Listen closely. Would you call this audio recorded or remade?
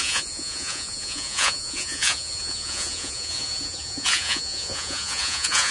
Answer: remade